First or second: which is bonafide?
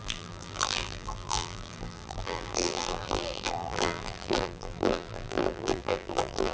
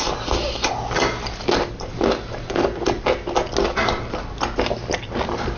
second